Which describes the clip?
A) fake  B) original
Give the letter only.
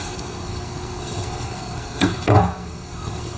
A